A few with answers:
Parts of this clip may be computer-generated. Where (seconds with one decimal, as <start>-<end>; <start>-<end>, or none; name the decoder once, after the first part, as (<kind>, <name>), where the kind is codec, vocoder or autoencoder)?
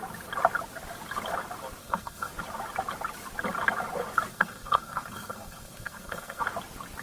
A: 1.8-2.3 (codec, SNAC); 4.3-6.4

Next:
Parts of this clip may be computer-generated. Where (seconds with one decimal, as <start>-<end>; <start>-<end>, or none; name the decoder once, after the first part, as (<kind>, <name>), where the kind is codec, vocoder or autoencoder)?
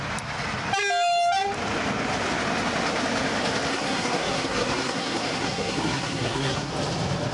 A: 3.7-6.7 (codec, SNAC)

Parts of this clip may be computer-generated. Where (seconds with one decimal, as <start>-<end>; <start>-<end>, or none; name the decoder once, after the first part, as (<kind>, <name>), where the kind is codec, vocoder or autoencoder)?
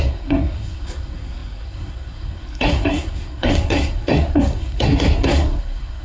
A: 0.0-6.0 (codec, SNAC)